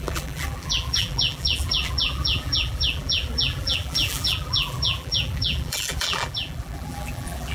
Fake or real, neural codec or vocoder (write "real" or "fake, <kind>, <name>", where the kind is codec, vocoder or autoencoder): fake, vocoder, BigVGAN v2